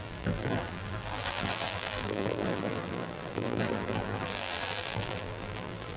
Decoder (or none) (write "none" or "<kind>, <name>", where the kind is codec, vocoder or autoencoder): vocoder, BigVGAN v2